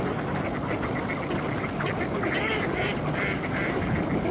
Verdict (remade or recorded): recorded